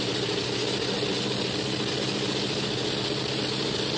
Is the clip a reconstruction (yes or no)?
no